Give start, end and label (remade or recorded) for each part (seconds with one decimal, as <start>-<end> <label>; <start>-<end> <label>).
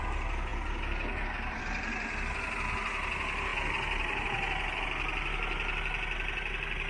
0.0-6.9 recorded